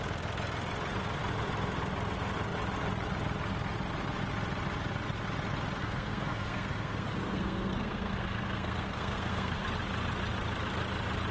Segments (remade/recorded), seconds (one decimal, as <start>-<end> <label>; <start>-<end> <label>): 0.0-5.8 recorded; 5.8-9.6 remade; 9.6-11.3 recorded